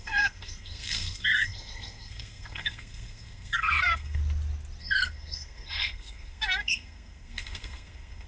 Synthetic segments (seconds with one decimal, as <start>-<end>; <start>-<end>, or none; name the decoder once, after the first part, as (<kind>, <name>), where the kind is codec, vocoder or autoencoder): 0.0-4.2 (codec, SNAC); 4.8-8.3